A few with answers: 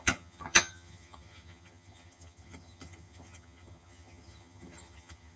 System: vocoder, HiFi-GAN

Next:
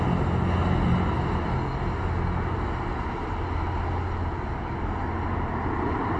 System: none